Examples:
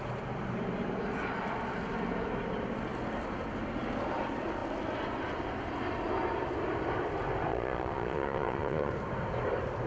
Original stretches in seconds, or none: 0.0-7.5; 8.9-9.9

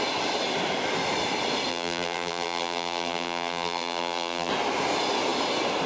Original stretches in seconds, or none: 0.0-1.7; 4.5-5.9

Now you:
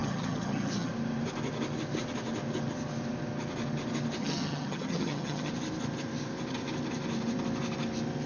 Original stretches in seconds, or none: 0.9-4.2; 5.5-8.3

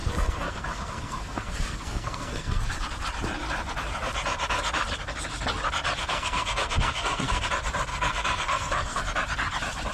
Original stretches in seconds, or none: 2.7-6.0; 7.5-7.9; 9.0-9.9